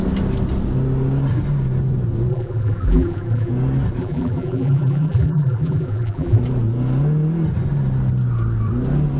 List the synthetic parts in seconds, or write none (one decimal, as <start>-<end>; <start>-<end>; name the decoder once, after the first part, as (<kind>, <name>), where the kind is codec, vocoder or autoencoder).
2.3-3.5 (vocoder, BigVGAN v2); 4.0-6.4